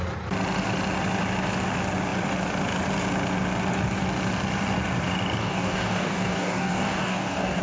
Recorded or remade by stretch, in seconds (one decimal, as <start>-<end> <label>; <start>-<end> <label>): 0.0-5.4 recorded; 5.4-7.6 remade